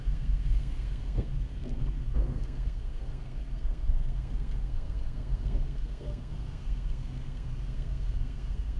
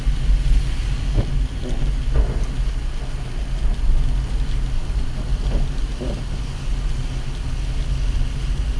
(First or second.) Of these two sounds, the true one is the second